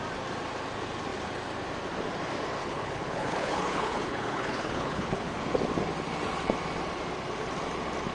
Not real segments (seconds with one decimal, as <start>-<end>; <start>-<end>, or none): 2.6-5.4